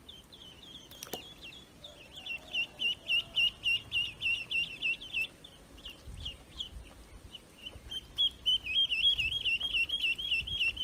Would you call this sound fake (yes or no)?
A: no